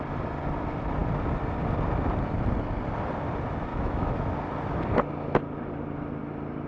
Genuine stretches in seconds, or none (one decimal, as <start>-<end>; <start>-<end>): 0.0-3.7; 4.3-6.7